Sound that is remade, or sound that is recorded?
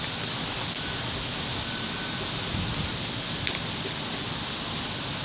recorded